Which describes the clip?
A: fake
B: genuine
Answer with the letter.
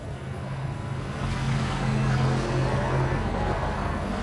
A